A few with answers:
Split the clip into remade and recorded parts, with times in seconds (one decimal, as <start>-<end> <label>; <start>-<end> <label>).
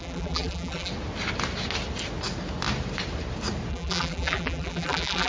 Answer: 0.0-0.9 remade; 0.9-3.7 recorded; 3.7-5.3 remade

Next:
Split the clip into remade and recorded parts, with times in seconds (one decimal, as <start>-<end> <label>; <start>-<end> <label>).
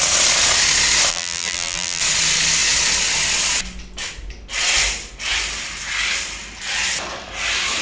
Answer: 0.0-1.1 recorded; 1.1-2.0 remade; 2.0-7.8 recorded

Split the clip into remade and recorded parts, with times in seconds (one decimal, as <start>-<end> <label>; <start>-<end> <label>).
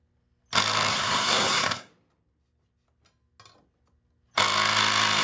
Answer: 0.0-0.9 recorded; 0.9-1.9 remade; 1.9-5.2 recorded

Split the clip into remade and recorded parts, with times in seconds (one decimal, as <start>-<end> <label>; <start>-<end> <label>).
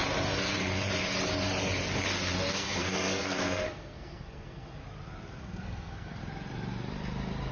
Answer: 0.0-2.5 recorded; 2.5-4.8 remade; 4.8-5.4 recorded; 5.4-6.2 remade; 6.2-7.5 recorded